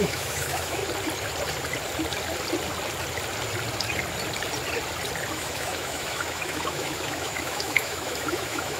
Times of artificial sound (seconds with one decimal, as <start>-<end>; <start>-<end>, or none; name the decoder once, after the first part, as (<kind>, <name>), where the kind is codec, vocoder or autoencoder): 0.0-0.8 (autoencoder, DAC-VAE); 5.3-8.8